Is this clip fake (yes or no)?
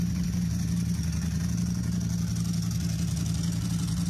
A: no